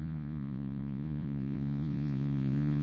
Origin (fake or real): fake